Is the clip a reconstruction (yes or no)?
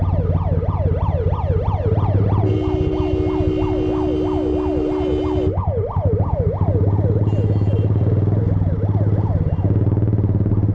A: no